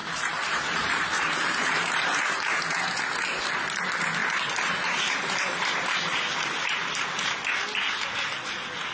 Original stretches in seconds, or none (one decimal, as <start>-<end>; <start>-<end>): 3.0-4.2; 6.2-8.9